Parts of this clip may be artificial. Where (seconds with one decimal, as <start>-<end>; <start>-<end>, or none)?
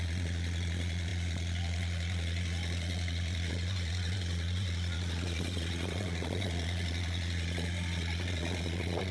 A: 0.0-9.1